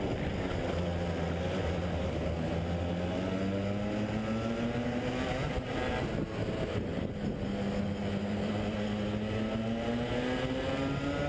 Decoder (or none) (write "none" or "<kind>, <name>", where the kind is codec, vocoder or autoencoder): none